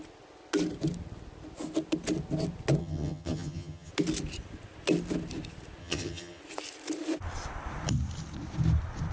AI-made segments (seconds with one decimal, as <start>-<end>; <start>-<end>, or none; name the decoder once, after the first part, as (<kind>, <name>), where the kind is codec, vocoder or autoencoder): 2.8-3.9 (vocoder, HiFi-GAN); 5.8-6.4